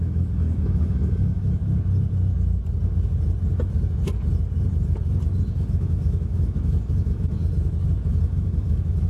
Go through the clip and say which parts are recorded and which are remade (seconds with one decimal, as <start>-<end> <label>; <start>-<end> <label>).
0.0-1.6 remade; 1.6-5.5 recorded; 5.5-7.4 remade; 7.4-8.2 recorded; 8.2-9.1 remade